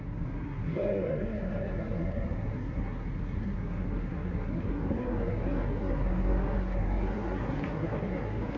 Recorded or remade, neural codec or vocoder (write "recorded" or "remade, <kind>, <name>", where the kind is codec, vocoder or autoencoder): remade, codec, SNAC